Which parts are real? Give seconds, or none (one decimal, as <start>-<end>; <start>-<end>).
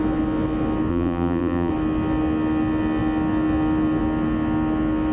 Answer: 0.0-0.9; 1.7-5.1